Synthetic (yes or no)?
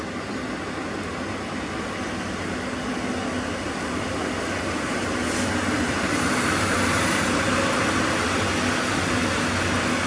no